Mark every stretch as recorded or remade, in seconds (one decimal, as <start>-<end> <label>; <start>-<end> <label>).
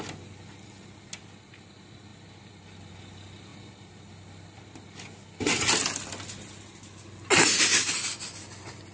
0.0-8.9 recorded